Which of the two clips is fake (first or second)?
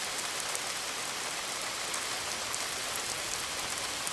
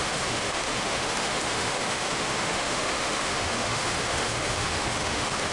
second